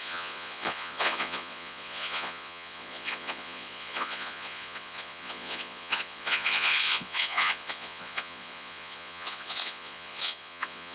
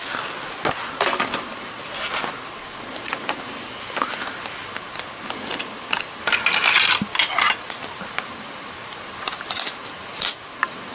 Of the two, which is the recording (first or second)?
second